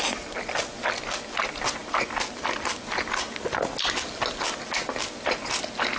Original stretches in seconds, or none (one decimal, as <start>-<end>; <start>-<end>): 0.0-6.0